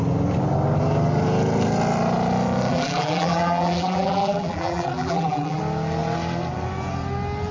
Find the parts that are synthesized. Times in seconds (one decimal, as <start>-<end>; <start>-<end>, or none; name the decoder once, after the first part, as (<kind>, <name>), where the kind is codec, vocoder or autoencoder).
2.7-5.6 (vocoder, BigVGAN v2)